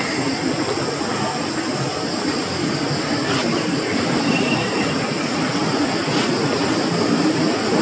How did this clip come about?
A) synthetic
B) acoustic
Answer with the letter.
B